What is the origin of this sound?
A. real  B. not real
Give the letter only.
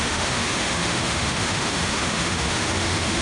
B